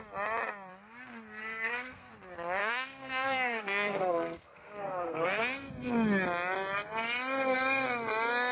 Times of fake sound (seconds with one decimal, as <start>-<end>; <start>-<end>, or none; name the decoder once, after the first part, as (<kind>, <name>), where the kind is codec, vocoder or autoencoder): 1.4-2.1 (codec, SNAC); 2.6-5.7